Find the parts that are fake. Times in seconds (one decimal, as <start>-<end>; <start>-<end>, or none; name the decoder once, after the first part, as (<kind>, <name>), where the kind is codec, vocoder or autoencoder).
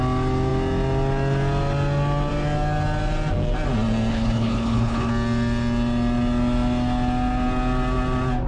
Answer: 4.1-5.1 (codec, HILCodec)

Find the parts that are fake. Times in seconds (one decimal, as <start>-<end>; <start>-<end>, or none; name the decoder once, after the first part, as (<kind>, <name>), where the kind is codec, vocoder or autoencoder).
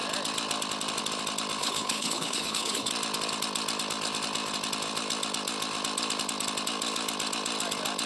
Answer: 1.6-2.9 (codec, HILCodec)